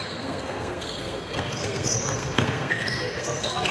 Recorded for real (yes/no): no